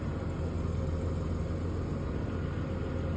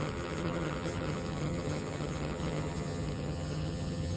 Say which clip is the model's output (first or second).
second